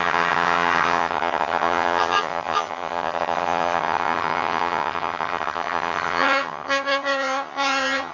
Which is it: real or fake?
fake